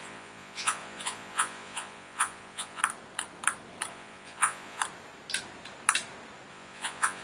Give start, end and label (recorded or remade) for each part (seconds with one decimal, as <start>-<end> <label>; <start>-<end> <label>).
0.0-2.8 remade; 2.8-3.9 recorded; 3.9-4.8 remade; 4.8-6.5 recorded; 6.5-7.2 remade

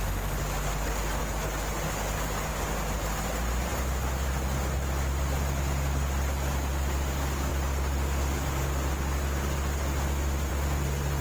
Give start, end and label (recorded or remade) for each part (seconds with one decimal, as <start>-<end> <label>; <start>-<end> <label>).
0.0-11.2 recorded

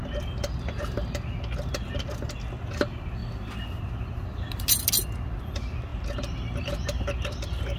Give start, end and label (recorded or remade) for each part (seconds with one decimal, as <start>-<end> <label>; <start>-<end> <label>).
0.0-7.8 recorded